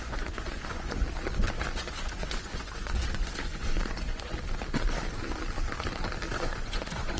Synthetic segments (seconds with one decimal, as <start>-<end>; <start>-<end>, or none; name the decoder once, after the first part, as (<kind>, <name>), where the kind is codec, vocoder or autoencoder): 0.0-1.0 (vocoder, Vocos); 1.7-4.3; 6.3-7.2